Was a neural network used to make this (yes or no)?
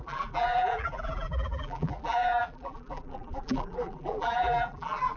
yes